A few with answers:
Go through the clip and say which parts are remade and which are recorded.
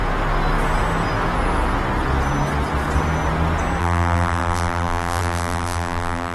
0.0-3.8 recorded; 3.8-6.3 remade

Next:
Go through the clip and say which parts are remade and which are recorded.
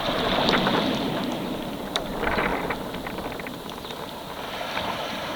0.0-2.5 remade; 2.5-4.9 recorded; 4.9-5.4 remade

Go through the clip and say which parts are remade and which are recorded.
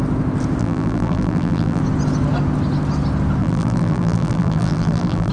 0.0-0.6 recorded; 0.6-1.8 remade; 1.8-3.4 recorded; 3.4-5.3 remade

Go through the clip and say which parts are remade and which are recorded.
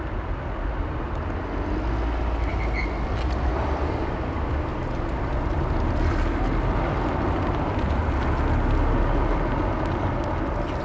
0.0-2.5 recorded; 2.5-3.5 remade; 3.5-4.7 recorded; 4.7-6.2 remade; 6.2-10.8 recorded